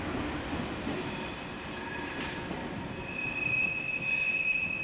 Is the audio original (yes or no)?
yes